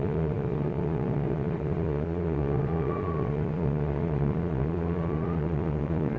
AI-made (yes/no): yes